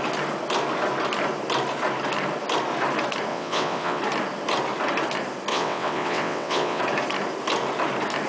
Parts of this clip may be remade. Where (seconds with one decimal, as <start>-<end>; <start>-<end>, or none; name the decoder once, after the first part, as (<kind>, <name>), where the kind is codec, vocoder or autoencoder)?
3.3-4.0 (vocoder, WaveNeXt); 5.5-6.8